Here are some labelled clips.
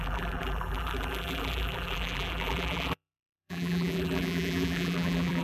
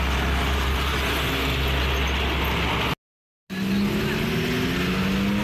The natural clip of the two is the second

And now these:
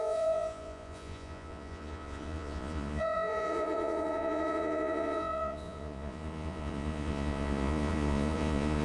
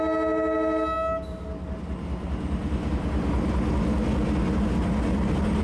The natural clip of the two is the second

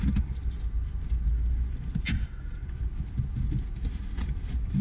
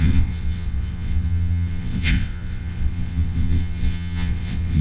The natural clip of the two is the first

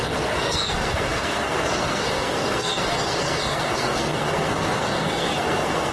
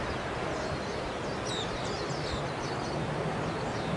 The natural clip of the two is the second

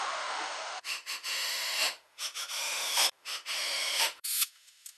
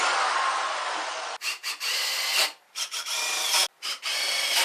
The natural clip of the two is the second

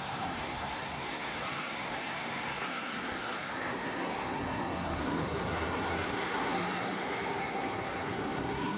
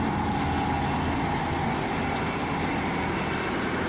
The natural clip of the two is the second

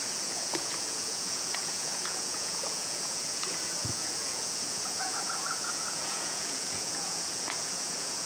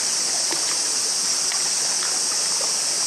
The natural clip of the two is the second